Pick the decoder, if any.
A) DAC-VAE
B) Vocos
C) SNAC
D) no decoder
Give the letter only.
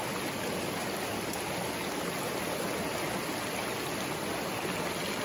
D